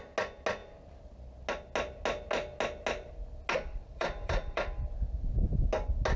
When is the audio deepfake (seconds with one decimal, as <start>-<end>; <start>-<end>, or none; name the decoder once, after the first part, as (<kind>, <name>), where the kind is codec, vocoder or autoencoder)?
3.9-4.6 (vocoder, BigVGAN v2)